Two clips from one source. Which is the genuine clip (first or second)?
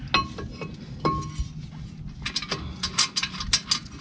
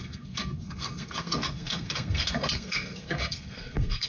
first